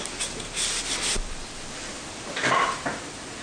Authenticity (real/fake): real